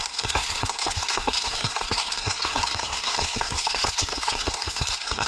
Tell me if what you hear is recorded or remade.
remade